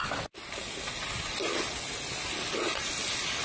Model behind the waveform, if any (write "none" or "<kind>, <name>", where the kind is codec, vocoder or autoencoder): none